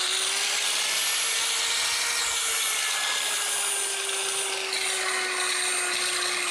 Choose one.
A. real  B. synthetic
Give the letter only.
A